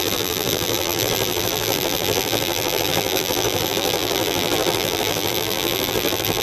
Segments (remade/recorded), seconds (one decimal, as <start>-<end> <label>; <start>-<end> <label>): 0.0-6.4 remade